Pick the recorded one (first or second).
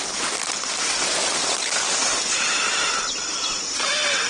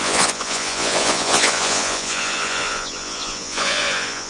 first